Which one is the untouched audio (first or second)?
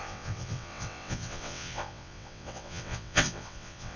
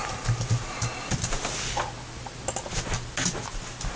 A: second